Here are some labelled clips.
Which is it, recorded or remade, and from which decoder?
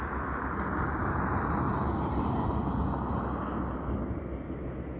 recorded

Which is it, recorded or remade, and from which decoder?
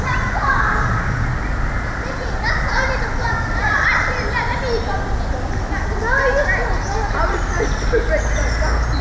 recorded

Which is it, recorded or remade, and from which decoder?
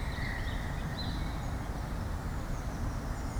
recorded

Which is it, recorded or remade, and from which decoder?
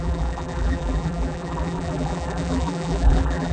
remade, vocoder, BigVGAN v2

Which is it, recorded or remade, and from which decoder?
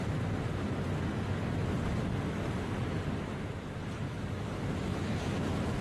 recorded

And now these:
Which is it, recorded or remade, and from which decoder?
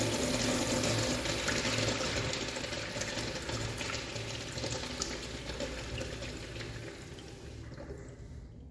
recorded